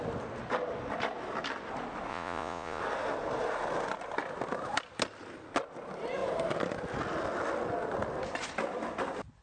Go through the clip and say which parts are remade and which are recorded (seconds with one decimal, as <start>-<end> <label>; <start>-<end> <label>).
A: 0.0-2.1 recorded; 2.1-2.8 remade; 2.8-9.4 recorded